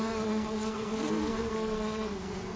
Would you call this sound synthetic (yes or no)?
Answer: yes